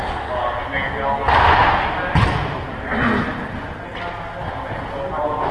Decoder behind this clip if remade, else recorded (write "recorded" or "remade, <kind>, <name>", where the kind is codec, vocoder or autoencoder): recorded